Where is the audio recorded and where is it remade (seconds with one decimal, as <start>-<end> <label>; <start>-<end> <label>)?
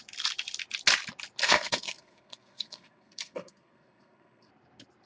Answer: 0.0-1.4 recorded; 1.4-4.5 remade; 4.5-5.1 recorded